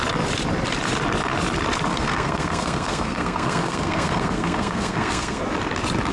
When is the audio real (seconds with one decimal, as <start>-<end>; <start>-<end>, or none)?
0.0-1.9; 5.4-6.1